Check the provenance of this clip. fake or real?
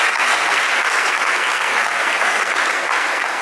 fake